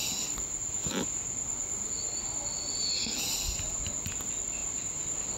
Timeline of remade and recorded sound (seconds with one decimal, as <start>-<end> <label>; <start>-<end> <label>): 0.0-4.6 recorded; 4.6-5.4 remade